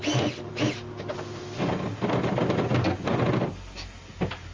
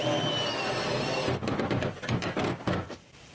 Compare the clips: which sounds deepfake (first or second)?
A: second